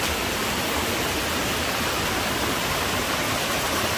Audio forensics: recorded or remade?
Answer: remade